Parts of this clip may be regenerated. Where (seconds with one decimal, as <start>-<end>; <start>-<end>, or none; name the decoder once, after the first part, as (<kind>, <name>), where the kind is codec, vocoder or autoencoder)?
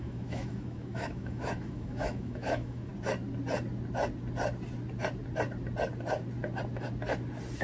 0.0-2.9 (autoencoder, DAC-VAE)